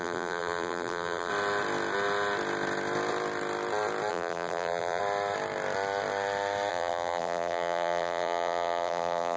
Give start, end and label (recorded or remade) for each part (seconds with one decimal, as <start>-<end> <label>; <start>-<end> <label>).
0.0-1.3 remade; 1.3-4.1 recorded; 4.1-5.0 remade; 5.0-6.7 recorded; 6.7-9.4 remade

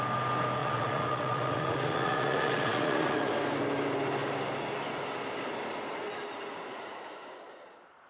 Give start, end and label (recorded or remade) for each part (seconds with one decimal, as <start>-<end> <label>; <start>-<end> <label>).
0.0-0.6 recorded; 0.6-3.3 remade; 3.3-6.7 recorded; 6.7-7.2 remade; 7.2-8.1 recorded

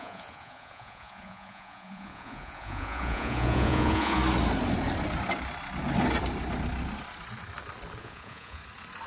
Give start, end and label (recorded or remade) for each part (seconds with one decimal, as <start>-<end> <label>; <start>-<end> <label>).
0.0-4.2 remade; 4.2-8.0 recorded; 8.0-8.6 remade; 8.6-9.1 recorded

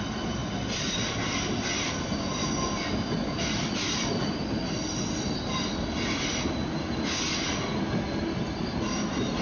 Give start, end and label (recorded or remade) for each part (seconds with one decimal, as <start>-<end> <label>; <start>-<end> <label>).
0.0-9.4 recorded

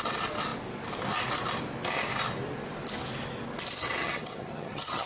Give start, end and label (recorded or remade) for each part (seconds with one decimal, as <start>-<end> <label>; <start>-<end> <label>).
0.0-4.0 recorded; 4.0-5.1 remade